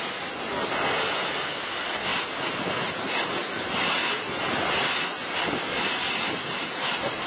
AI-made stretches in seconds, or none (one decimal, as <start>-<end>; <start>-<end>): none